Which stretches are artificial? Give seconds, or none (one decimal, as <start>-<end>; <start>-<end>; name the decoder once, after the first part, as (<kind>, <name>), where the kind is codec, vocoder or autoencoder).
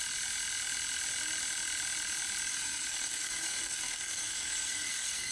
2.5-5.3 (codec, SNAC)